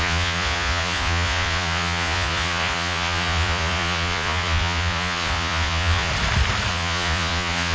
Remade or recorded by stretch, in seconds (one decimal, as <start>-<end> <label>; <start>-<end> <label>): 0.0-6.1 remade; 6.1-6.7 recorded; 6.7-7.7 remade